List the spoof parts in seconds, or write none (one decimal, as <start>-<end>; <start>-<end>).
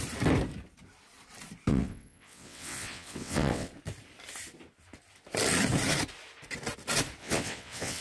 1.7-3.7; 7.2-8.0